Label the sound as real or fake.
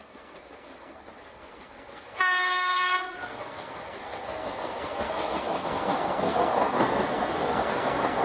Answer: fake